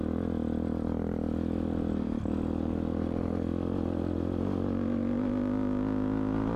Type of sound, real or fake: real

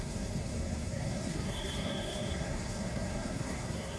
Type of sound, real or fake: fake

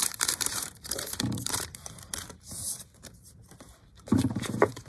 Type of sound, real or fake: fake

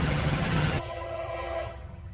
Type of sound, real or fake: fake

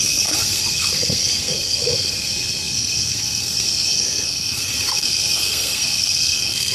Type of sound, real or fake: fake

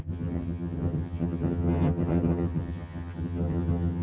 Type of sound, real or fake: fake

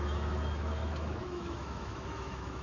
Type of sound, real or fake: fake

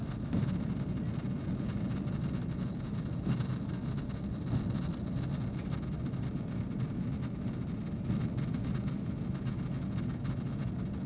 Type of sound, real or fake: real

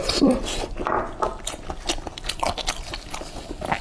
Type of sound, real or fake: real